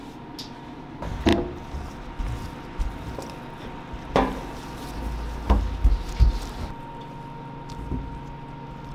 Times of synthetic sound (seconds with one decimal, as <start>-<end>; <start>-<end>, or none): none

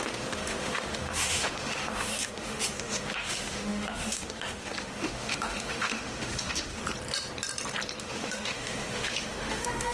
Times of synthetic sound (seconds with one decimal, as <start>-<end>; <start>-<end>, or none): 0.0-6.8; 8.0-9.9

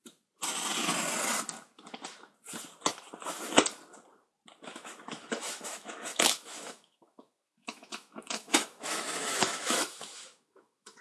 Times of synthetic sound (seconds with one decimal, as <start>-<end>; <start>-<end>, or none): 4.7-11.0

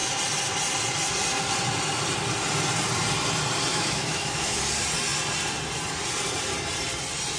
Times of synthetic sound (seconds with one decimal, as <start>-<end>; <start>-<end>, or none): 3.7-4.6

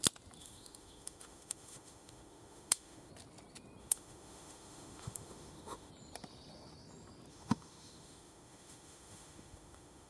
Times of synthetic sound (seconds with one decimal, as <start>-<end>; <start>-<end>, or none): 0.4-3.1; 3.8-5.9; 7.3-10.1

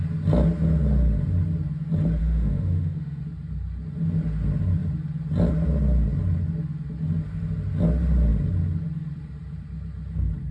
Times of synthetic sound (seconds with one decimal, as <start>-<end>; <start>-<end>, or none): 2.2-3.2

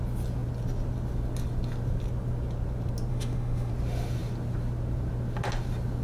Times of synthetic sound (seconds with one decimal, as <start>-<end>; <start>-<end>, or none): 3.1-3.7